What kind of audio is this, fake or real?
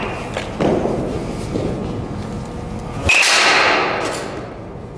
real